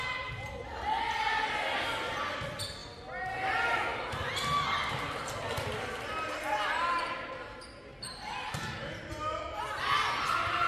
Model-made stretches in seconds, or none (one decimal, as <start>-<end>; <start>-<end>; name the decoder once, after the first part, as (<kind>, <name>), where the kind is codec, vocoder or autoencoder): none